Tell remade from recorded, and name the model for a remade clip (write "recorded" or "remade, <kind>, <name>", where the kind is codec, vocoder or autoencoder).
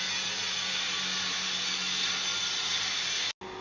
recorded